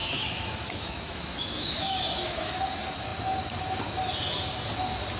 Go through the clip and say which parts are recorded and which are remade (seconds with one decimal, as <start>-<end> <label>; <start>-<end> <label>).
0.0-2.6 remade; 2.6-5.2 recorded